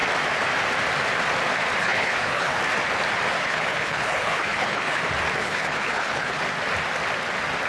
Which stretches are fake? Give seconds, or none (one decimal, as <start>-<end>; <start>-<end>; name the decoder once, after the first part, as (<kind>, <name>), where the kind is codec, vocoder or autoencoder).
1.8-2.6 (codec, HILCodec); 3.4-5.0; 5.4-6.4